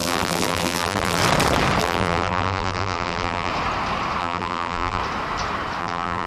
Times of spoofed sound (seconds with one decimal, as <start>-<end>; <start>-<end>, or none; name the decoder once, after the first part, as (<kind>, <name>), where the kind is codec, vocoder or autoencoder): 0.0-1.2 (vocoder, BigVGAN v2); 1.8-3.5; 4.2-5.0; 5.8-6.3